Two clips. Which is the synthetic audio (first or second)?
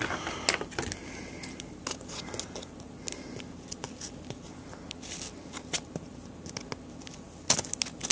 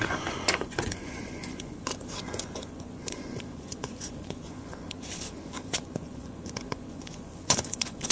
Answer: second